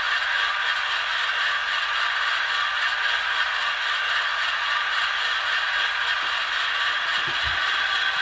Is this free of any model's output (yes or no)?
yes